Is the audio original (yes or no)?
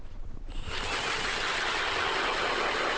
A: yes